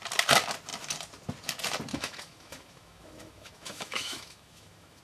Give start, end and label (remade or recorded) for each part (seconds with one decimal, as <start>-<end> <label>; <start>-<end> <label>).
0.0-1.9 recorded; 1.9-5.0 remade